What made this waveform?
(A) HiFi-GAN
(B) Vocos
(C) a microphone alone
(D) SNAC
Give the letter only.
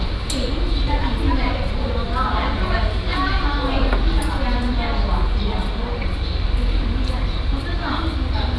C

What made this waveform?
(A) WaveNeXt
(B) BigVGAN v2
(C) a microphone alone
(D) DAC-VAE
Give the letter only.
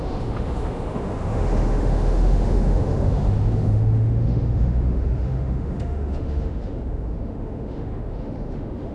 D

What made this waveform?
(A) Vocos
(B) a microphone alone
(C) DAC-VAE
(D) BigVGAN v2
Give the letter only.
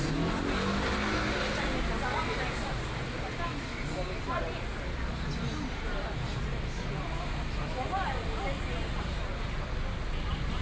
B